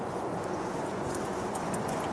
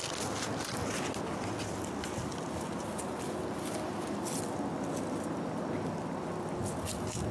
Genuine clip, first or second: second